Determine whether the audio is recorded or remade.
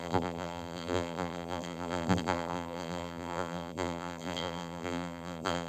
remade